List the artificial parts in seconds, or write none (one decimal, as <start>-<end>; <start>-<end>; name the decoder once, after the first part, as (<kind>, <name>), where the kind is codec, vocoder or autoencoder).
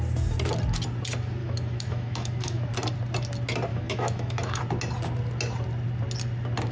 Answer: 1.4-2.7 (autoencoder, DAC-VAE); 3.7-4.6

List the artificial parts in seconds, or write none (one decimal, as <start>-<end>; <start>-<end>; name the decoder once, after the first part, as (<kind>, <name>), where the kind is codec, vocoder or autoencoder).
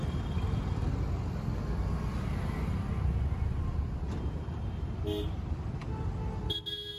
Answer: none